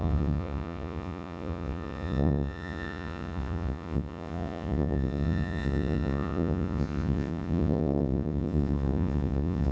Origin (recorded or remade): remade